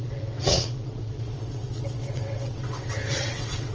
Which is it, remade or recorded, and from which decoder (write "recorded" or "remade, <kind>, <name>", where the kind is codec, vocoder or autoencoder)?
remade, vocoder, WaveNeXt